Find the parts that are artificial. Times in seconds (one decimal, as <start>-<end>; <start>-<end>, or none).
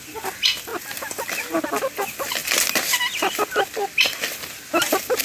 none